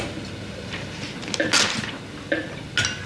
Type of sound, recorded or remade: recorded